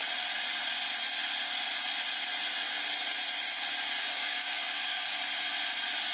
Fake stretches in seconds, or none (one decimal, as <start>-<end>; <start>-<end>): 4.0-5.1